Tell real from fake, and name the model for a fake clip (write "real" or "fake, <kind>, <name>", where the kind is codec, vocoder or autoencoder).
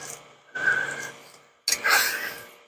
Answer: real